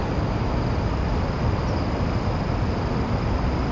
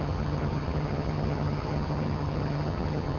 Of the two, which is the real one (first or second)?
first